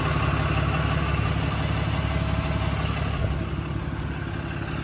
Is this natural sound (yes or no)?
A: yes